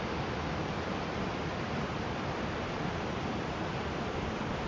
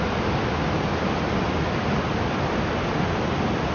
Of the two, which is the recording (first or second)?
second